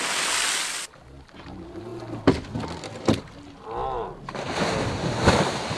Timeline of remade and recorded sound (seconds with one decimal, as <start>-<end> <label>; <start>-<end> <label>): 0.0-5.8 recorded